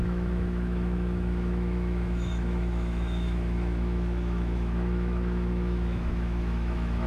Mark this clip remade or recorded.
remade